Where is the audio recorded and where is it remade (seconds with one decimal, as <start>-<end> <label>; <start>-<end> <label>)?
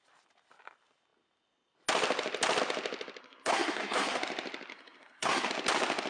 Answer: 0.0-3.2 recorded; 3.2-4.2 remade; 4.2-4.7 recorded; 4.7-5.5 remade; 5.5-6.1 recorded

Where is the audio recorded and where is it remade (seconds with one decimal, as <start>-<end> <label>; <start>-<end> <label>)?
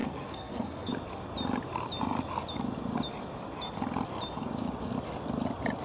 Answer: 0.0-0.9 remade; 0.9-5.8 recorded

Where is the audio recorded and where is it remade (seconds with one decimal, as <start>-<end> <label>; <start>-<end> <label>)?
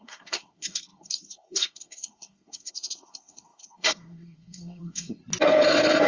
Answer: 0.0-5.2 remade; 5.2-6.1 recorded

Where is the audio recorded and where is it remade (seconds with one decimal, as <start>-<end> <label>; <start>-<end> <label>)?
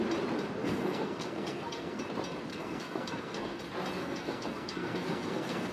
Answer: 0.0-0.6 recorded; 0.6-2.0 remade; 2.0-2.5 recorded; 2.5-3.6 remade; 3.6-4.0 recorded; 4.0-5.7 remade